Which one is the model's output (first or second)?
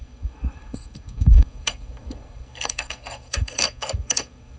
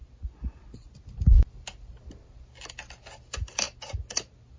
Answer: first